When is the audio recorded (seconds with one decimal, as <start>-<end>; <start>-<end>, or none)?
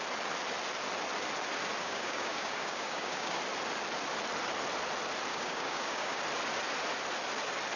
0.0-1.8; 3.4-5.3; 6.2-7.8